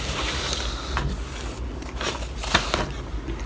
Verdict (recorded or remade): recorded